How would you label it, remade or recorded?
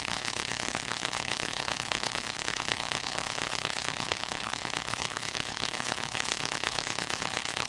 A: remade